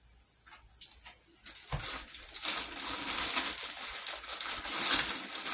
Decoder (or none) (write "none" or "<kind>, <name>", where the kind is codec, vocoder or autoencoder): none